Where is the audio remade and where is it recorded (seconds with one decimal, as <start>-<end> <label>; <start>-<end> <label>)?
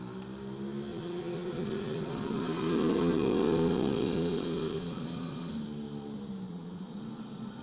0.0-0.9 recorded; 0.9-5.5 remade; 5.5-6.5 recorded; 6.5-7.6 remade